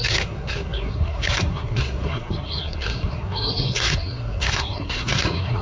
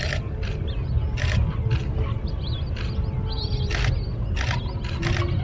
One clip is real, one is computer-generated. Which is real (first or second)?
second